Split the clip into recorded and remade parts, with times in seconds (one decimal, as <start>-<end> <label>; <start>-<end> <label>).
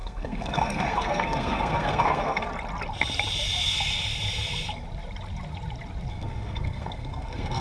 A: 0.0-2.5 remade; 2.5-6.1 recorded; 6.1-7.6 remade